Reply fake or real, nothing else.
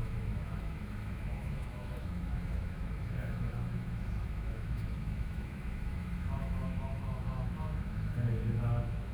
fake